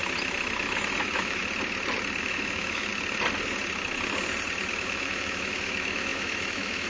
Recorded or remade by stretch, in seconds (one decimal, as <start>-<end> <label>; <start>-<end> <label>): 0.0-1.0 recorded; 1.0-1.4 remade; 1.4-2.2 recorded; 2.2-2.9 remade; 2.9-4.7 recorded; 4.7-6.9 remade